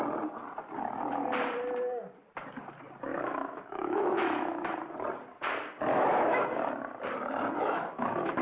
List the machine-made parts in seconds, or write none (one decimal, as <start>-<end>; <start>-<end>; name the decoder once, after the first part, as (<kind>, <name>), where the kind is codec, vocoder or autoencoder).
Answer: 3.1-4.7 (autoencoder, DAC-VAE); 5.9-6.4; 7.6-8.4